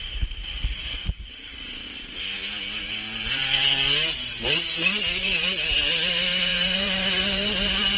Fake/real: fake